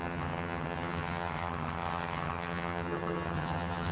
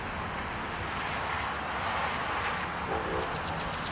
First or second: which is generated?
first